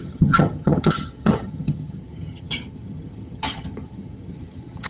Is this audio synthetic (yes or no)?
yes